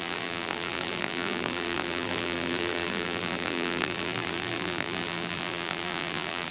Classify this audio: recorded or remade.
remade